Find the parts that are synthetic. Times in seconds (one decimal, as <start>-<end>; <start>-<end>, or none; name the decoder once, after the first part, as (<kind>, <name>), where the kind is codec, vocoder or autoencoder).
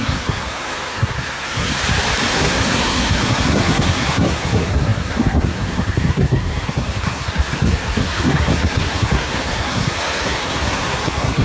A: 0.0-1.7 (codec, SNAC); 2.3-11.4